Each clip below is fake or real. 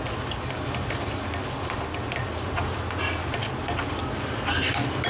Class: real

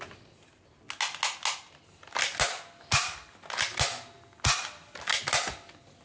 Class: real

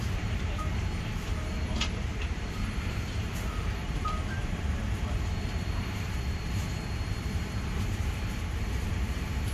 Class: fake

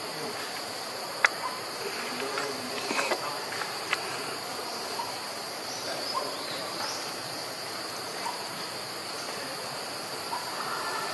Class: fake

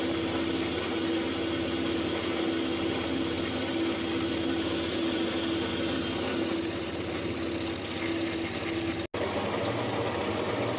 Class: real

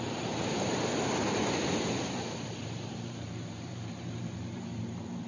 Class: fake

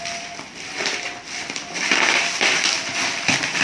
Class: fake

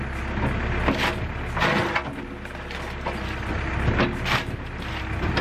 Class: real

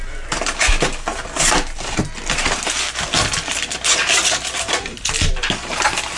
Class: real